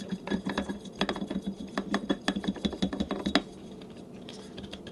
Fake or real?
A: real